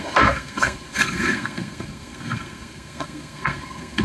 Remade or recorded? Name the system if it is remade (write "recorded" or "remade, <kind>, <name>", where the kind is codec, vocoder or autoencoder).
remade, codec, SNAC